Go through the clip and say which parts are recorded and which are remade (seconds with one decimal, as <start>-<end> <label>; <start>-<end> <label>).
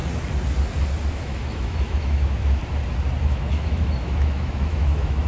0.0-1.1 recorded; 1.1-2.6 remade; 2.6-3.2 recorded; 3.2-5.3 remade